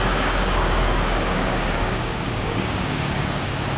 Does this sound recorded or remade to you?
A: remade